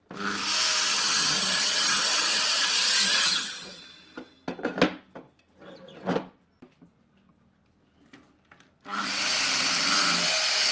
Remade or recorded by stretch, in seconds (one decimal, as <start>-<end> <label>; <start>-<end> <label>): 0.0-0.9 recorded; 0.9-3.8 remade; 3.8-10.7 recorded